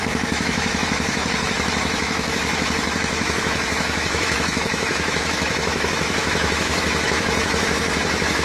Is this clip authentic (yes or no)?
no